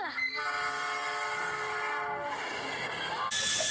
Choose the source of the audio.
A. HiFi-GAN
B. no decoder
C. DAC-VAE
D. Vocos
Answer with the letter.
B